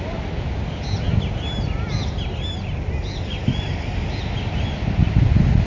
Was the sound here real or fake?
real